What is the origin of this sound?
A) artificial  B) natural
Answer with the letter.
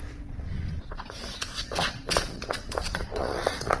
A